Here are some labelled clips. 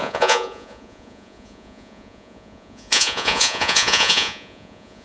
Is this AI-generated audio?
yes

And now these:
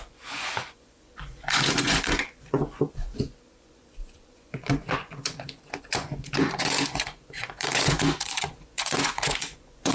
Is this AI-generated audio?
yes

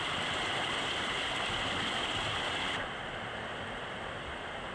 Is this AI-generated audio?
no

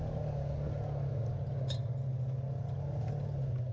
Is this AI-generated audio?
no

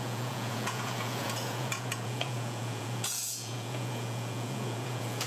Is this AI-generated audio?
yes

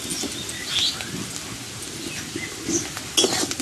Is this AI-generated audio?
no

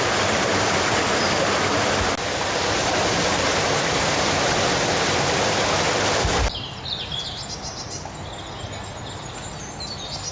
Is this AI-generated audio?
no